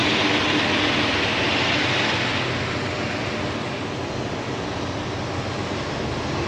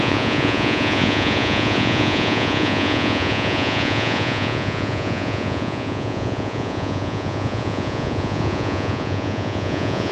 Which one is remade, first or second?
second